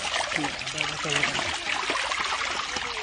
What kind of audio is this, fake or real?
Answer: real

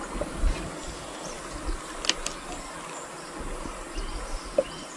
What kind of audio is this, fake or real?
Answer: real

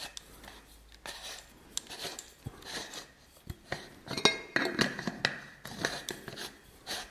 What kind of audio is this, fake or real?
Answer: real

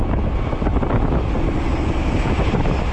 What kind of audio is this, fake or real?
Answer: real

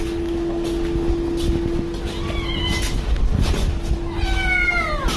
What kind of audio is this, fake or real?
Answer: real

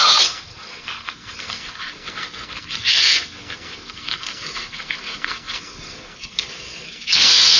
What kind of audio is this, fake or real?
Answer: fake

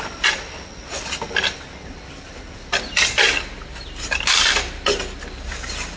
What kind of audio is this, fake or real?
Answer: real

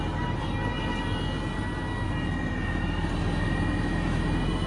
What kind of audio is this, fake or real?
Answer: real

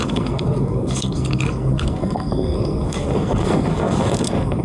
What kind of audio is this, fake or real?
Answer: fake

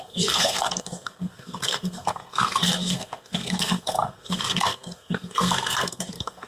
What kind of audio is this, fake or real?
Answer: fake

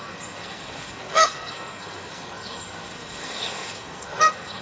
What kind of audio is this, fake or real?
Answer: fake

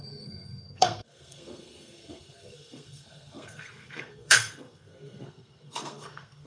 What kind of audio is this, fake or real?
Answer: fake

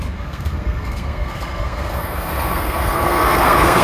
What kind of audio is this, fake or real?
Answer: fake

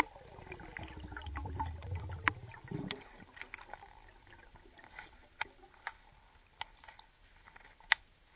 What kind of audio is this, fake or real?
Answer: real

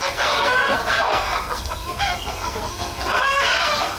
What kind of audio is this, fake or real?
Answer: fake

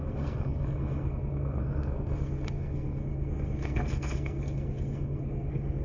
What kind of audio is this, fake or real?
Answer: fake